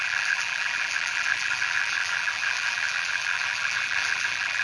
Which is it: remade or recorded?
remade